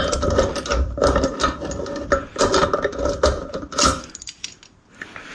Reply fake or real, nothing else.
real